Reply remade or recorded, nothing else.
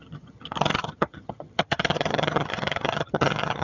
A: remade